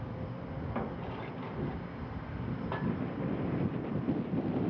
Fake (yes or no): no